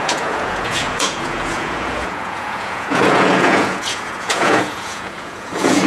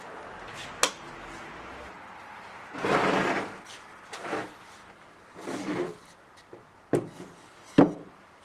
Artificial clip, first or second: first